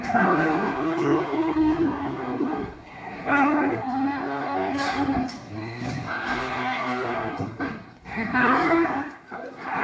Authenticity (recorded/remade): remade